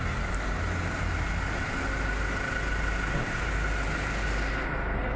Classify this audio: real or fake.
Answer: real